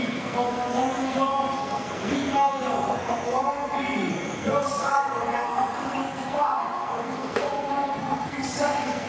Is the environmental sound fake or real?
fake